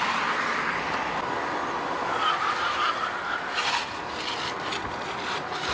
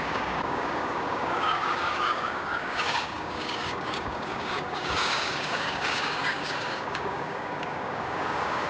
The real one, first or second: first